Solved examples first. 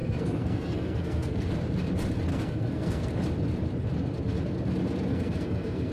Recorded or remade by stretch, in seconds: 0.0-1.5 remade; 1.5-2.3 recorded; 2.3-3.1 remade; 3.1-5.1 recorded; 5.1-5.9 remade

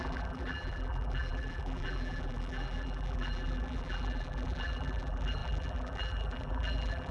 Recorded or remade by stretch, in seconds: 0.0-7.1 remade

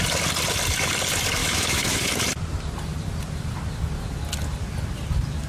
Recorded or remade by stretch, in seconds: 0.0-1.4 recorded; 1.4-2.1 remade; 2.1-5.5 recorded